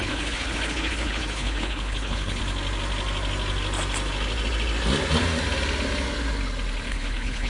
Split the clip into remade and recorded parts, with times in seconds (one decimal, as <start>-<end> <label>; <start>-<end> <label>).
0.0-2.4 remade; 2.4-6.9 recorded; 6.9-7.5 remade